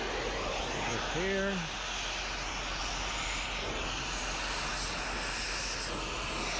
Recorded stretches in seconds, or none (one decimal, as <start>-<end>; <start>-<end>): 0.0-6.6